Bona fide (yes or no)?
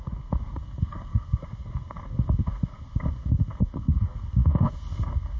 no